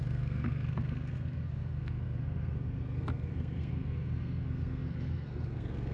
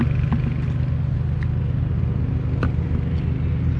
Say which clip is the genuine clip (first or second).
second